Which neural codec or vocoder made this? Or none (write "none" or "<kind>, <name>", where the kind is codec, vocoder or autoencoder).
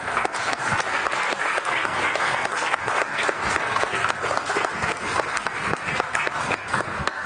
codec, SNAC